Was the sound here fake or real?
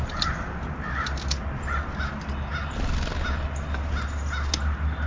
real